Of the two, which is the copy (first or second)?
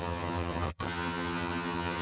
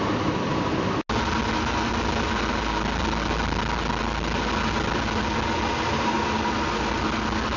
first